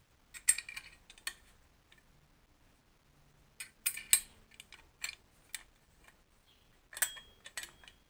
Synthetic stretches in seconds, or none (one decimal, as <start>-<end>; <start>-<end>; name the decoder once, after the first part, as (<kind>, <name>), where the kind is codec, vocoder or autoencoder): none